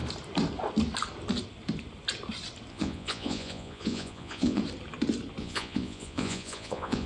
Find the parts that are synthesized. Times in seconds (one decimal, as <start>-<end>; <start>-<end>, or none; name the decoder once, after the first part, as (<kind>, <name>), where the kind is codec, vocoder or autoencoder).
2.7-4.6 (vocoder, Vocos); 5.4-7.1